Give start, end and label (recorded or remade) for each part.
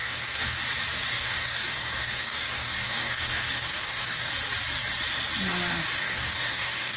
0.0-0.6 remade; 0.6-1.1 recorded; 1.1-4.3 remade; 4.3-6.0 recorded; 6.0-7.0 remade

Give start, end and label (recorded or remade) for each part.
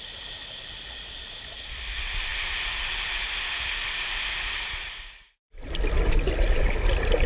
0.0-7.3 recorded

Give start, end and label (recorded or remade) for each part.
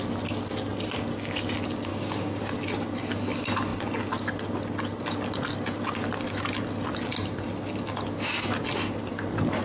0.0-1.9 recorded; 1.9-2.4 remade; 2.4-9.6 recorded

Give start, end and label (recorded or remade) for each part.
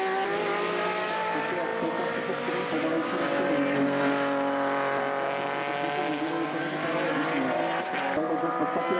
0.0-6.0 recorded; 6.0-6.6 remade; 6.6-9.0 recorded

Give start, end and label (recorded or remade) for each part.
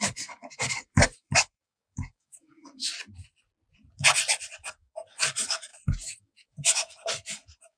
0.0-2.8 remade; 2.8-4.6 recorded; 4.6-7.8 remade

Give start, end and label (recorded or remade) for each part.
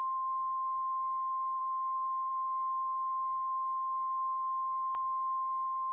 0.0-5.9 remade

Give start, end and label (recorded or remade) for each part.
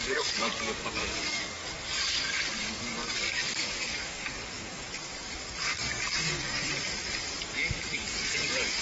0.0-1.6 remade; 1.6-2.1 recorded; 2.1-4.4 remade; 4.4-5.7 recorded; 5.7-6.5 remade; 6.5-7.8 recorded; 7.8-8.8 remade